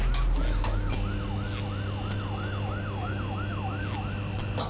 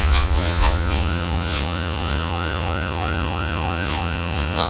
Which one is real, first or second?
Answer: first